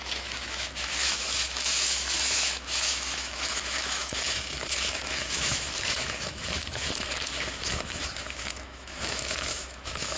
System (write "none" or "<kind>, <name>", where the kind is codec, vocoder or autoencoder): autoencoder, DAC-VAE